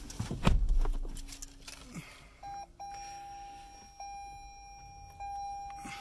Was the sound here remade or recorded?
recorded